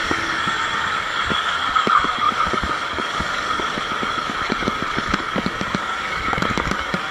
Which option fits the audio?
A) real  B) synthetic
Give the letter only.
B